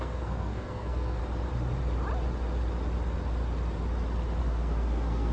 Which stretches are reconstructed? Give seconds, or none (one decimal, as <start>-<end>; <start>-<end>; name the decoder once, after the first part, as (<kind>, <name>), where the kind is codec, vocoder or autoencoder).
0.0-1.2 (codec, SNAC); 4.4-5.3